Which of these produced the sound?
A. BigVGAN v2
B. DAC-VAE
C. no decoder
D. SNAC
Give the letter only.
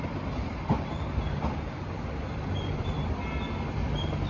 A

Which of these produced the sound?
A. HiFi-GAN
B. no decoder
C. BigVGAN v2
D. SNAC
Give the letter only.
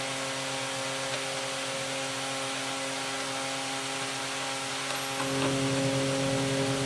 B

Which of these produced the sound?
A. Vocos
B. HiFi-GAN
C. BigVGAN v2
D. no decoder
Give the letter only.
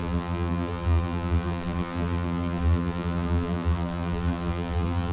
C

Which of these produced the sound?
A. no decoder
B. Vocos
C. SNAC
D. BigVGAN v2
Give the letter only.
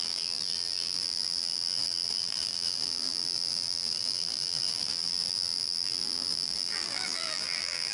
D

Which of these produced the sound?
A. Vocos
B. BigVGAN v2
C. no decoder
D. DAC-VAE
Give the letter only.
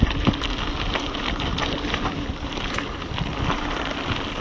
C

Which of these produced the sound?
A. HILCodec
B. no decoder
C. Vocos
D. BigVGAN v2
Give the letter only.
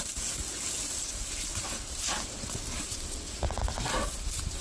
B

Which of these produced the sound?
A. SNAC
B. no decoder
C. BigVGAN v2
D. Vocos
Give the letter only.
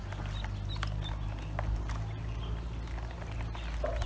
B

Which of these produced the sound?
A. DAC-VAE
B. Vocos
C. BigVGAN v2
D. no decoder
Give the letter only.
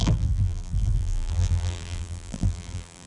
C